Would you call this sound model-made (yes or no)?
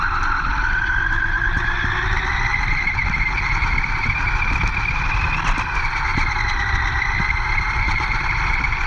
no